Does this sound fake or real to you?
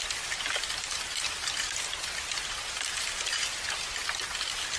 real